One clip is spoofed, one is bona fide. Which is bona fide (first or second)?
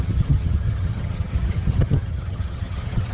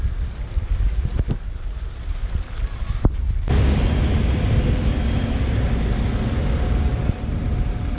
second